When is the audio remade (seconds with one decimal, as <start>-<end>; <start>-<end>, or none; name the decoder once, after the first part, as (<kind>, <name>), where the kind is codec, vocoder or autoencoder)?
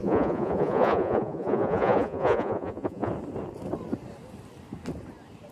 0.0-3.1 (vocoder, Vocos)